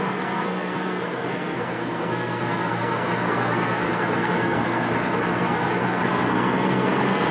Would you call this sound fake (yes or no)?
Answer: yes